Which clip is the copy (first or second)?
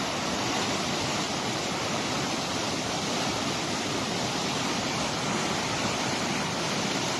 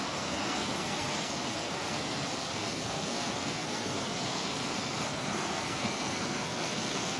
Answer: second